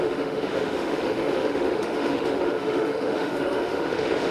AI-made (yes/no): yes